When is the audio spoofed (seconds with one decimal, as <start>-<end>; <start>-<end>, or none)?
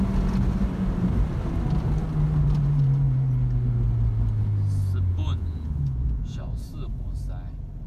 5.1-6.6